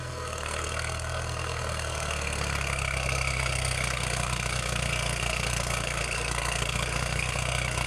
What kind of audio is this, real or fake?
fake